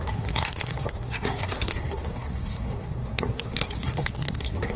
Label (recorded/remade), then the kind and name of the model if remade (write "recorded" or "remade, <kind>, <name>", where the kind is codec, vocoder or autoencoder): remade, codec, SNAC